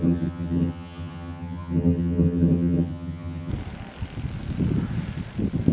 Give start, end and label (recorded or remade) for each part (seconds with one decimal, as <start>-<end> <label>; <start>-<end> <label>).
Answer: 0.0-3.5 remade; 3.5-5.7 recorded